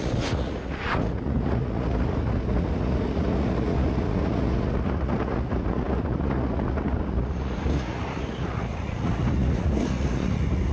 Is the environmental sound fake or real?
fake